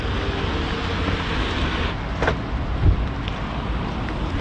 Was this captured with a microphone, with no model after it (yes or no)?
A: yes